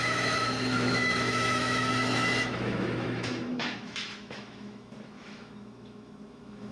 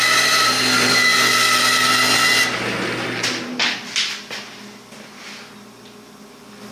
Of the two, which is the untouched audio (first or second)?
second